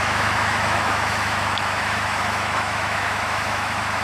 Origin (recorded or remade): remade